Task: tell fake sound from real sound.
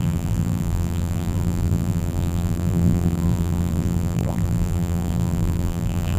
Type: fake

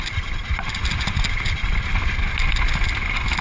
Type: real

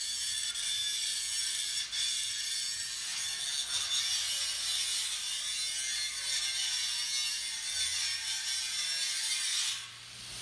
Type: real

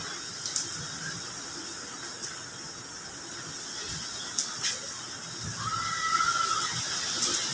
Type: real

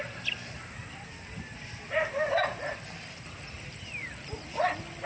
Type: real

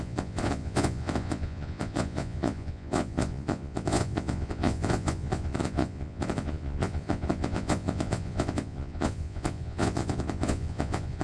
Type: fake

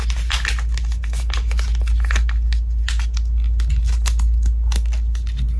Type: real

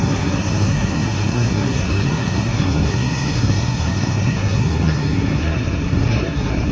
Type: fake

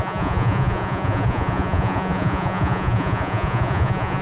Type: fake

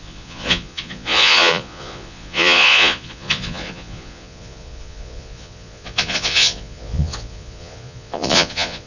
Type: fake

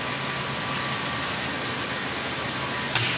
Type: real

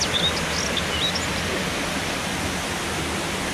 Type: real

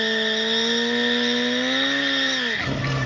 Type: real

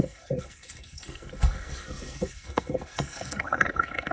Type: fake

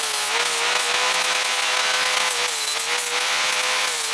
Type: real